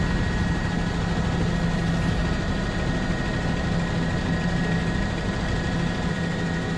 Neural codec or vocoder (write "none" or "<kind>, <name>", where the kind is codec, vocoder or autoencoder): none